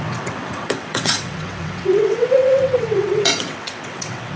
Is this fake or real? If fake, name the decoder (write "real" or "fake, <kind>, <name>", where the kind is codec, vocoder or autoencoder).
fake, vocoder, WaveNeXt